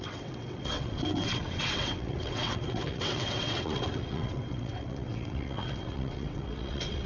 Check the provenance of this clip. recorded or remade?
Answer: remade